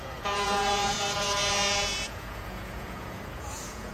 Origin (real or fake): fake